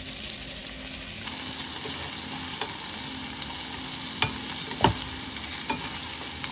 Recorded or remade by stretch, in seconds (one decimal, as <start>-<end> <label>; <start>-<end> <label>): 0.0-6.5 recorded